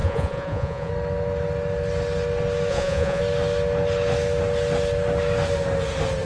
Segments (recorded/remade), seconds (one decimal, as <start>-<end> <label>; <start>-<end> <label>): 0.0-0.9 remade; 0.9-2.7 recorded; 2.7-3.2 remade; 3.2-6.2 recorded